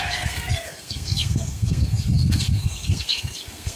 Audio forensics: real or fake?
fake